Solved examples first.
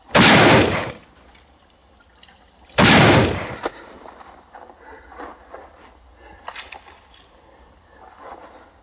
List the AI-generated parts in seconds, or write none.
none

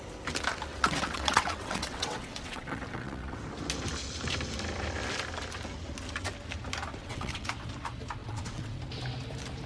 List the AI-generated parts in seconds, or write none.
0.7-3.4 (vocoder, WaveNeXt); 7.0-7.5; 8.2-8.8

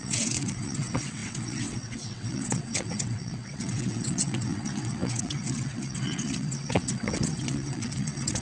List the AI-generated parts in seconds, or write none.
0.0-8.4 (vocoder, WaveNeXt)

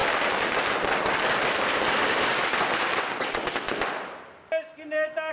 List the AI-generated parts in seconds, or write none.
3.0-3.4 (vocoder, WaveNeXt)

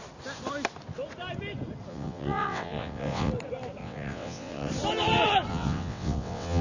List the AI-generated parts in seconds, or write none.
1.9-3.3 (vocoder, WaveNeXt); 3.8-4.7; 5.5-6.6

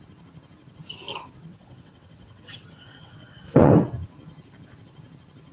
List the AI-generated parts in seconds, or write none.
1.5-3.7 (vocoder, WaveNeXt)